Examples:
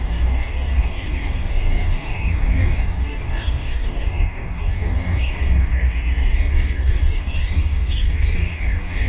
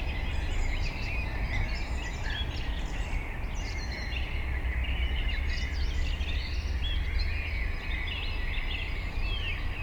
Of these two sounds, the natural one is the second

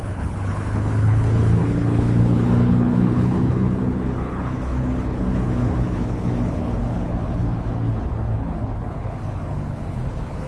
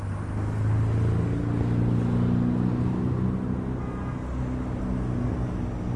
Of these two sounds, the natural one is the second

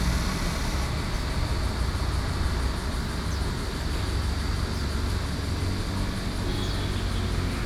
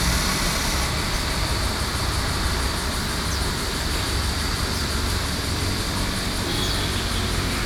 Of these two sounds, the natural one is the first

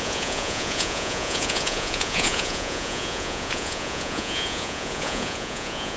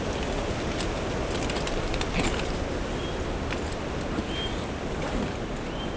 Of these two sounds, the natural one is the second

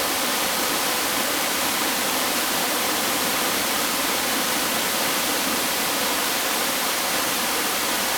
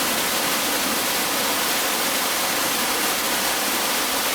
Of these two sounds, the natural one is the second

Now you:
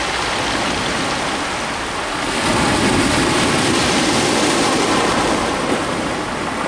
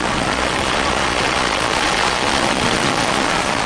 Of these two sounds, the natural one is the first